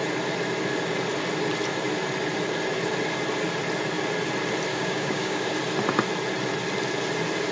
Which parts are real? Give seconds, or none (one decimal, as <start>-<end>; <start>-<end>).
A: 0.0-4.7; 5.5-7.5